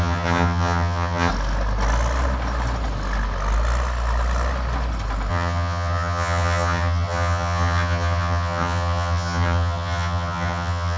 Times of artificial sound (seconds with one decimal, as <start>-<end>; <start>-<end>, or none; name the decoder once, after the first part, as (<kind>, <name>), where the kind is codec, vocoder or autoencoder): 0.0-1.3 (vocoder, HiFi-GAN); 5.3-11.0